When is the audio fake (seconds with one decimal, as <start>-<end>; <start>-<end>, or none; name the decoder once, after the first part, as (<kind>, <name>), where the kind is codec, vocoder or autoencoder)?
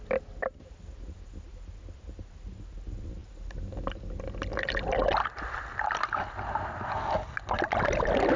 none